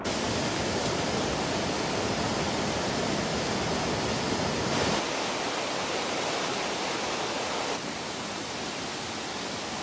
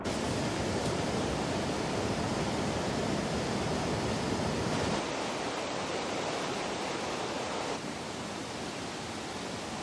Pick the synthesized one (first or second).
second